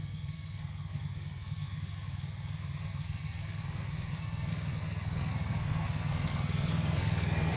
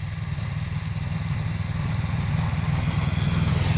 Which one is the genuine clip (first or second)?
second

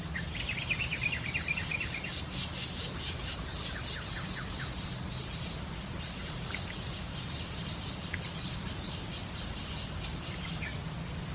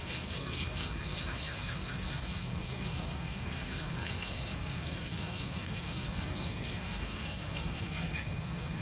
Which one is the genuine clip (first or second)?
first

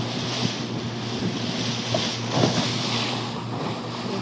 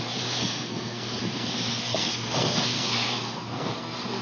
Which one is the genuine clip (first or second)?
first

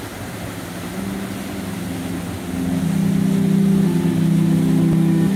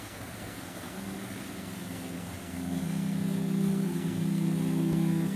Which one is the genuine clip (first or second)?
first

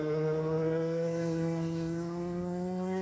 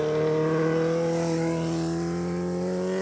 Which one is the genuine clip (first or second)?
second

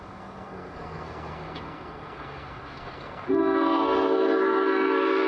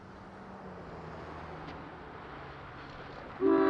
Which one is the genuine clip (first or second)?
second